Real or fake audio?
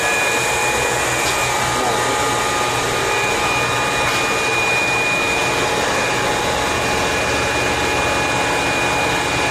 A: real